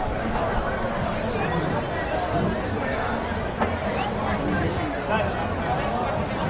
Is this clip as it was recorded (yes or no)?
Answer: yes